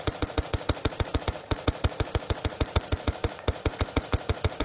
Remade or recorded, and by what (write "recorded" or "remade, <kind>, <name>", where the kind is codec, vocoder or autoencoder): remade, vocoder, Vocos